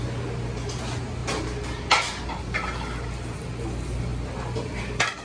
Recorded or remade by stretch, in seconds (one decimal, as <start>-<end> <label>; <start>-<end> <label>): 0.0-5.2 recorded